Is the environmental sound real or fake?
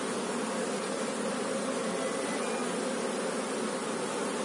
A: real